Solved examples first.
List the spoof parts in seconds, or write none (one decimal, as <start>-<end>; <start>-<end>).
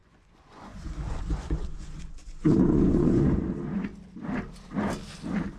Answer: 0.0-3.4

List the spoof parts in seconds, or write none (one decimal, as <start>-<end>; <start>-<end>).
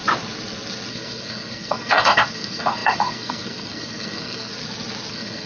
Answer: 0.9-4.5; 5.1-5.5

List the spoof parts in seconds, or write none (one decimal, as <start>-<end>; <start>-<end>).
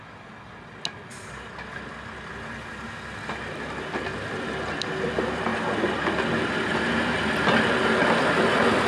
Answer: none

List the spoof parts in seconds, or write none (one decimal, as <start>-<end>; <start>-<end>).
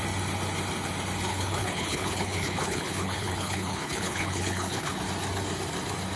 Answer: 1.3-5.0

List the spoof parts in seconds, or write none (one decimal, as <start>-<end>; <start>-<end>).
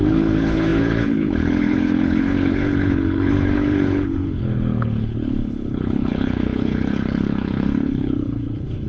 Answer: 0.0-8.9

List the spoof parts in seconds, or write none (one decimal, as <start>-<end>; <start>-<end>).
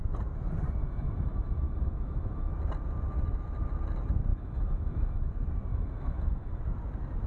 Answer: 0.8-2.5; 4.3-5.3; 5.7-6.6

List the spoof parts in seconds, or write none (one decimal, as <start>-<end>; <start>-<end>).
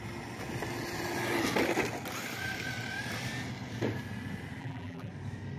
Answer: 4.6-5.1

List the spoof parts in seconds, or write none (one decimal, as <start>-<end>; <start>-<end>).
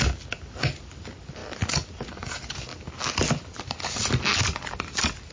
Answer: none